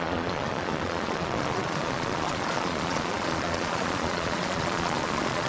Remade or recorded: remade